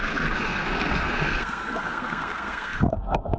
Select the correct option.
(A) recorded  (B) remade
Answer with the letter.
B